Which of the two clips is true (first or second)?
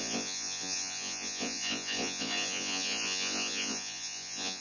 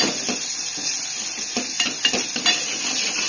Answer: second